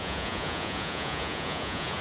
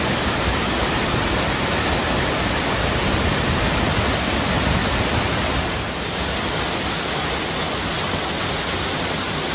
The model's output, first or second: first